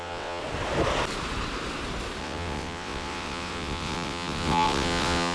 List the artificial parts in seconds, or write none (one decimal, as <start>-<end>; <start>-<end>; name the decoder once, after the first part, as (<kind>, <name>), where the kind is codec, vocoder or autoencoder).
0.0-0.4 (vocoder, WaveNeXt); 2.2-5.3